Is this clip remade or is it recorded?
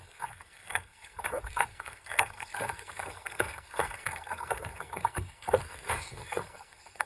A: remade